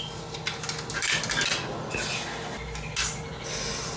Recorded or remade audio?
recorded